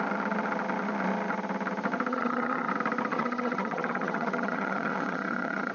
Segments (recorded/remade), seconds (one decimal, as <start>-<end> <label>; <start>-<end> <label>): 0.0-2.1 recorded; 2.1-2.7 remade; 2.7-3.1 recorded; 3.1-5.7 remade